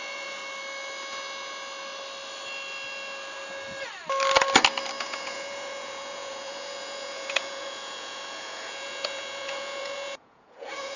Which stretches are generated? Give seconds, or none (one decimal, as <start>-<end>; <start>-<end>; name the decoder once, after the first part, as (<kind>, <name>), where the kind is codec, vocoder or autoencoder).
0.0-0.4 (vocoder, Vocos); 5.0-11.0